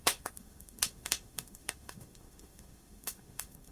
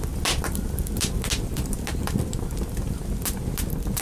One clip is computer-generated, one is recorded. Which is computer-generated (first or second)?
first